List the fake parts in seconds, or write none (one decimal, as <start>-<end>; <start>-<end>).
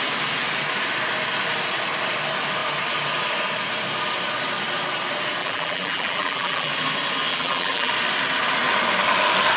5.4-6.7; 7.3-7.9